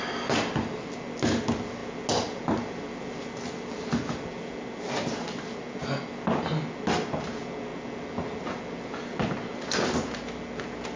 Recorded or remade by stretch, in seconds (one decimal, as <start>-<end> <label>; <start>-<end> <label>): 0.0-11.0 recorded